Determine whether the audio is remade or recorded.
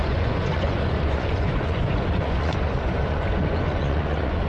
remade